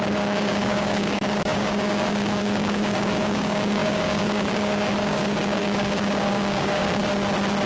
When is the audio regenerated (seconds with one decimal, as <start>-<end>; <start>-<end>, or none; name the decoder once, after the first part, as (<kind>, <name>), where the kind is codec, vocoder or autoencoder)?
0.0-7.0 (codec, DAC)